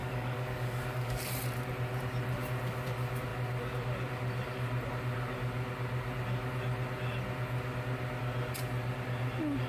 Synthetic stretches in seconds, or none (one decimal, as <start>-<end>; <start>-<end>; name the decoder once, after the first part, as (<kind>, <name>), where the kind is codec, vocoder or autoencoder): 0.0-1.2 (codec, DAC)